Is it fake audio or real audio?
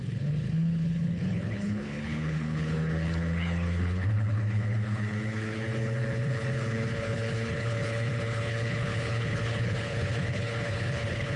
fake